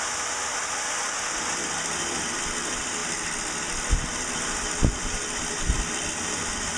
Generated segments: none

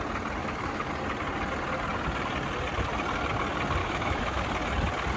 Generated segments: 0.4-0.9 (autoencoder, DAC-VAE); 3.8-4.4

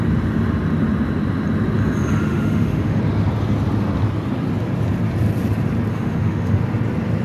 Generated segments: 2.2-3.0 (autoencoder, DAC-VAE); 5.9-6.6

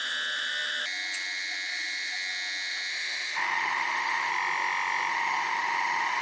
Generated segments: 2.9-4.3 (autoencoder, DAC-VAE); 5.1-6.2

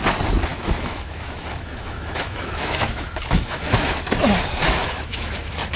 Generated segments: 0.5-4.0 (autoencoder, DAC-VAE); 4.8-5.8

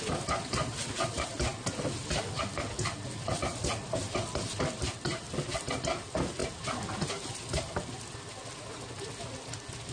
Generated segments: none